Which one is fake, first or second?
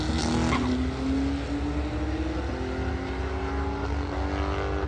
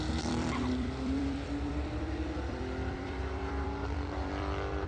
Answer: second